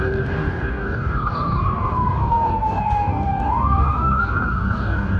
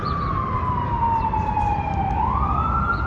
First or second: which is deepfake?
first